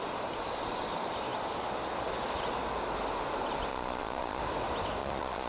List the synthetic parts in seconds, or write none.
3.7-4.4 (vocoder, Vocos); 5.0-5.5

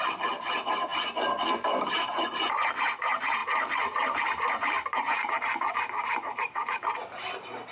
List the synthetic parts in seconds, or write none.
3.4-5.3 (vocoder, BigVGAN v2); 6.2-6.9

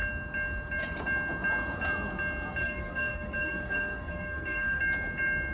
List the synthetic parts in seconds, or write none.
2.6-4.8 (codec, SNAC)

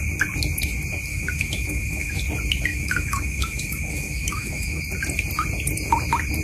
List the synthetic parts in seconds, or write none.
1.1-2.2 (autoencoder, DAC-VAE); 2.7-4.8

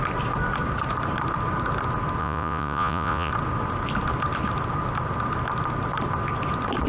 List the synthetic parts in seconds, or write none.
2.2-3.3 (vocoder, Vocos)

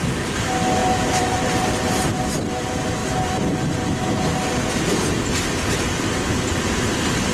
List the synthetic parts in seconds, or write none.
0.8-2.1 (vocoder, BigVGAN v2)